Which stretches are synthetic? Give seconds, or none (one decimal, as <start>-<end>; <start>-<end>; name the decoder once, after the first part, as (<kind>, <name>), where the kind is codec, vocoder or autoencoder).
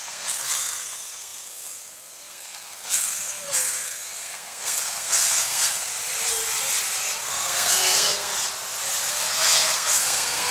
0.0-5.9 (codec, SNAC); 7.2-8.3; 9.1-10.5